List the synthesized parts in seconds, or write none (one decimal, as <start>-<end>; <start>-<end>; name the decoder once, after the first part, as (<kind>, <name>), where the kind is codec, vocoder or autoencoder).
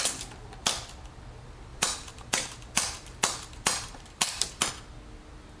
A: 1.7-4.7 (vocoder, BigVGAN v2)